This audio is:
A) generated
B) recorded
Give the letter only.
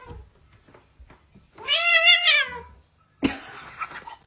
B